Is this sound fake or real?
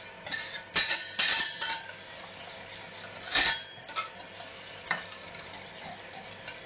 real